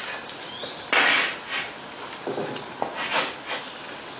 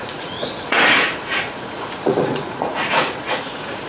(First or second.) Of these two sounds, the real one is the first